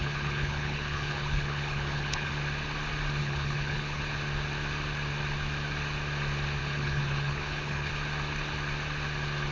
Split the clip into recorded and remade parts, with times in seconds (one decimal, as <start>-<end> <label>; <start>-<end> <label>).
0.0-2.3 remade; 2.3-3.2 recorded; 3.2-4.0 remade; 4.0-6.6 recorded; 6.6-7.9 remade; 7.9-9.5 recorded